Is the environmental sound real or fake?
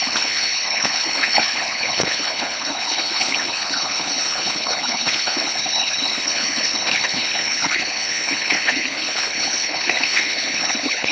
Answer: fake